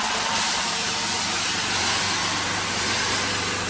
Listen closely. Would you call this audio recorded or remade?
recorded